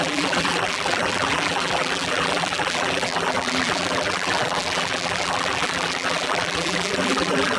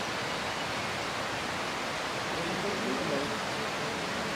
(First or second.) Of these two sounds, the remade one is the first